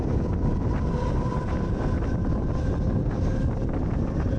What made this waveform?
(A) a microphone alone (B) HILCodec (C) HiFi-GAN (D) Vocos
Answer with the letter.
A